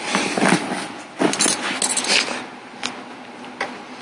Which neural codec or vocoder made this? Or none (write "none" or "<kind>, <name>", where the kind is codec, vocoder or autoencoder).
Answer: none